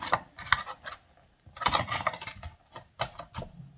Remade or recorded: recorded